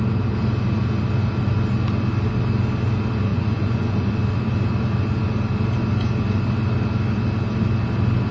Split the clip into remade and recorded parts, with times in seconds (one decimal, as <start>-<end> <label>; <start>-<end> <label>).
0.0-3.3 recorded; 3.3-4.1 remade; 4.1-8.3 recorded